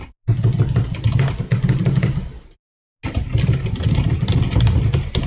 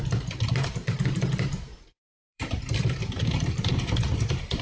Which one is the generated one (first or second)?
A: second